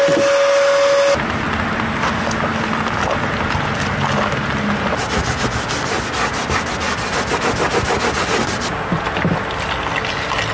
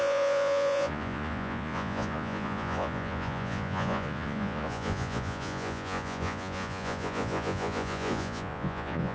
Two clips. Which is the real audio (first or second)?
first